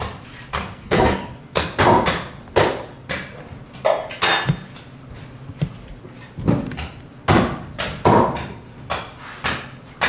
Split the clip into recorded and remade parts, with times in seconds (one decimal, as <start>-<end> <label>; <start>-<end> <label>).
0.0-0.5 recorded; 0.5-1.7 remade; 1.7-10.1 recorded